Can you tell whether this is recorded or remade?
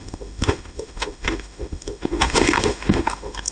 remade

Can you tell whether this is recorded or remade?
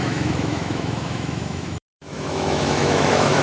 remade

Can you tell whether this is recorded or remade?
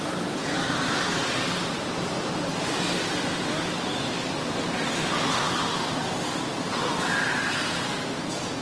recorded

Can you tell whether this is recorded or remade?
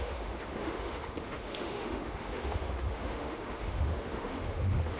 remade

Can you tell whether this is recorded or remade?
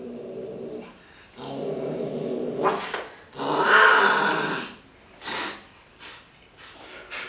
recorded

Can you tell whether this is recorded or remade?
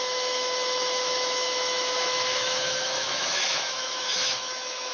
remade